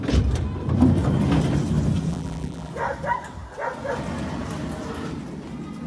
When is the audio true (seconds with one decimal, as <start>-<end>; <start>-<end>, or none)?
0.0-2.1; 2.7-5.9